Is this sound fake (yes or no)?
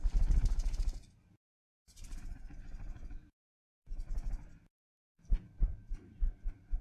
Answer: no